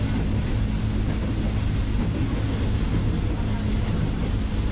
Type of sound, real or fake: real